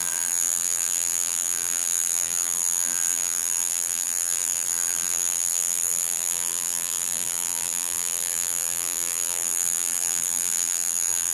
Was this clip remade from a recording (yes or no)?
yes